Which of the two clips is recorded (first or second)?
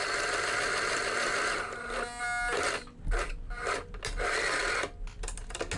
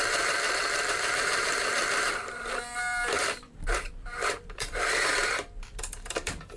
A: first